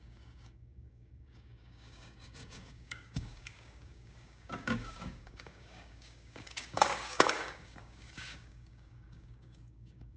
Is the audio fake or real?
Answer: fake